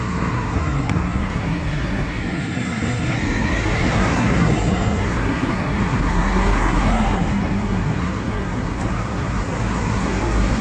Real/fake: fake